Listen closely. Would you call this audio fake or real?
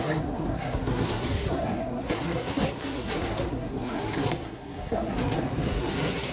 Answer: fake